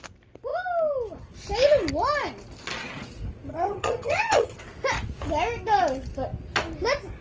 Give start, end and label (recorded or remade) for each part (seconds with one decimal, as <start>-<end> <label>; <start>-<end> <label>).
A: 0.0-3.5 recorded; 3.5-4.6 remade; 4.6-7.2 recorded